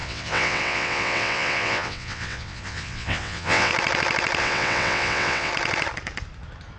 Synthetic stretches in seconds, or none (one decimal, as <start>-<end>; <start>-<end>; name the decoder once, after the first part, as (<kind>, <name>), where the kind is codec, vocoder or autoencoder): 0.0-3.7 (vocoder, WaveNeXt); 4.4-5.5